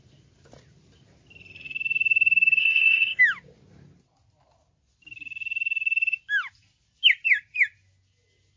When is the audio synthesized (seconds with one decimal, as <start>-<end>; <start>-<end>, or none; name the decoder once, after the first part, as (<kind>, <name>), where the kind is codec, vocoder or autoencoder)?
2.6-3.2 (codec, ZipCodec)